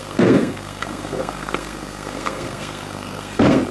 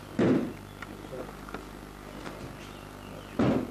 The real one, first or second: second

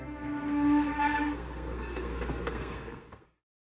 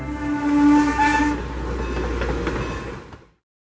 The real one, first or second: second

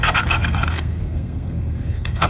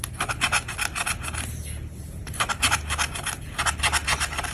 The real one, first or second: second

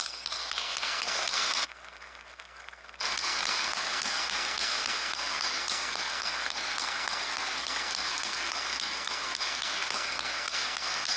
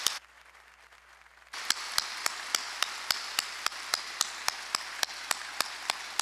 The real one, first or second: second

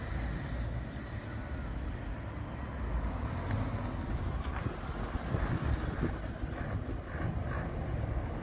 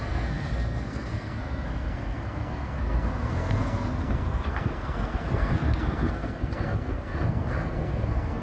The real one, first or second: first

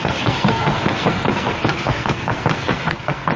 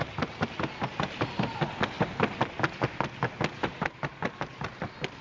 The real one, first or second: second